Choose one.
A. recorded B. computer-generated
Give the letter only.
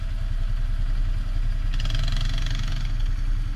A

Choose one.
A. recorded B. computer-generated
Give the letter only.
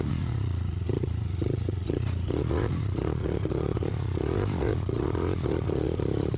B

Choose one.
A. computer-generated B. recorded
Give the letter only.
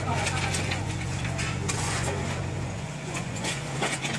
A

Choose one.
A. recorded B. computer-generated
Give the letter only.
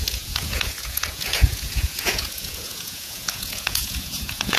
B